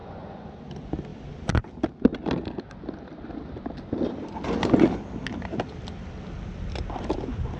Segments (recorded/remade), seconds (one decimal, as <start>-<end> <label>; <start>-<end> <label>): 0.0-0.5 remade; 0.5-7.6 recorded